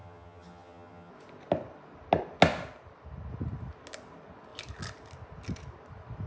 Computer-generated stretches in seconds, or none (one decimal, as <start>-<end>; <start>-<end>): 0.0-1.1